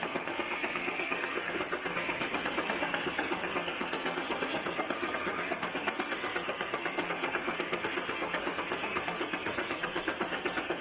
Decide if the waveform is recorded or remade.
remade